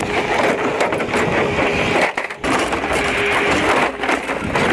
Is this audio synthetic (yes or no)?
no